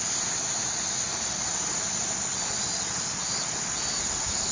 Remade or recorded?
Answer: recorded